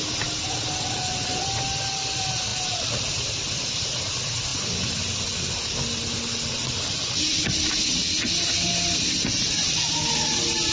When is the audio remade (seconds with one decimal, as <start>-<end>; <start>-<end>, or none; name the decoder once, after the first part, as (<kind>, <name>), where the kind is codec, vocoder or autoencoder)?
none